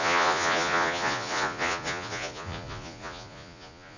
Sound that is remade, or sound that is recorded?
remade